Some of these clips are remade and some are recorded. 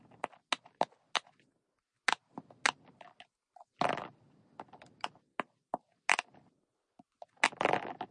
recorded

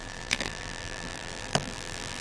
remade